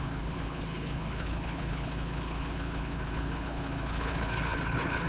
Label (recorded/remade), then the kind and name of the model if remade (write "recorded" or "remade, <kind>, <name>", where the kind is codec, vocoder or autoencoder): remade, codec, HILCodec